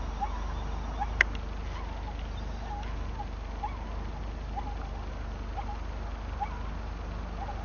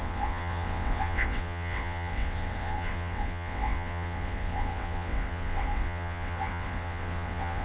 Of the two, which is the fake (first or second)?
second